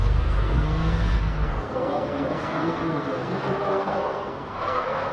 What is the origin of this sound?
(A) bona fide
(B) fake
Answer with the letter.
B